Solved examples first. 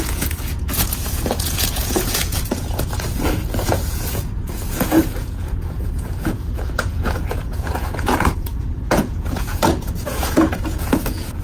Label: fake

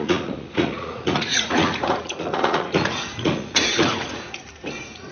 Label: fake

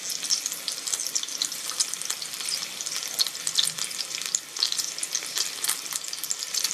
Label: real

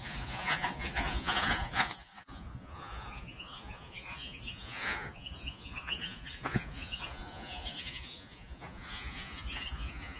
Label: fake